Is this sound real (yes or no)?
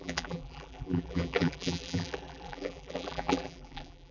no